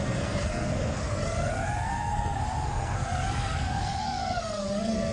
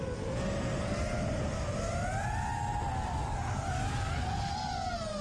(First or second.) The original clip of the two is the second